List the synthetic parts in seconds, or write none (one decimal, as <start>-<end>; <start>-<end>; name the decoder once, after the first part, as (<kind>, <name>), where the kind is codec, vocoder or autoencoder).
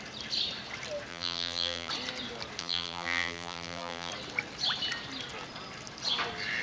1.1-1.9 (vocoder, BigVGAN v2); 2.6-4.1